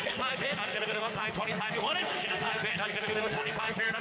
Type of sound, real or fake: fake